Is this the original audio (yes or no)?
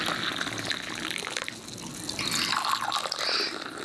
yes